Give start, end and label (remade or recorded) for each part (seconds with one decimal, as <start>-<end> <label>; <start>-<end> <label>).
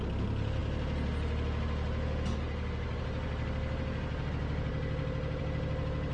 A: 0.0-6.1 recorded